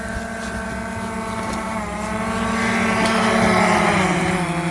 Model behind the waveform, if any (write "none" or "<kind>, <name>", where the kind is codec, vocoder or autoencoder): none